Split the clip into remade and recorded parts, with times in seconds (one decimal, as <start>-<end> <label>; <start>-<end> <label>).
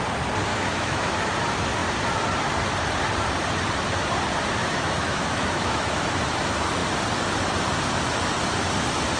0.0-0.5 recorded; 0.5-1.1 remade; 1.1-4.6 recorded; 4.6-6.2 remade; 6.2-9.2 recorded